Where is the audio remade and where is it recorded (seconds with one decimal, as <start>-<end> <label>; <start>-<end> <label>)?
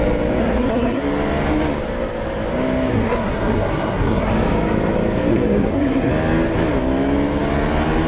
0.0-0.4 recorded; 0.4-1.0 remade; 1.0-2.9 recorded; 2.9-4.3 remade; 4.3-5.3 recorded; 5.3-6.1 remade; 6.1-8.1 recorded